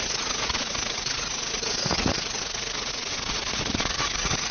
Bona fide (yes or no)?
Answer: no